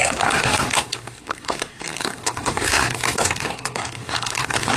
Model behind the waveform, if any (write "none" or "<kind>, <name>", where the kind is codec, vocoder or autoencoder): codec, SNAC